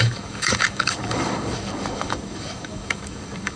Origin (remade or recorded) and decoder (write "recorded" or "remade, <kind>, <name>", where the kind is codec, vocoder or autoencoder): remade, codec, DAC